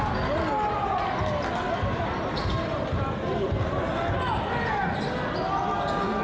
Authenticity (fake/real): real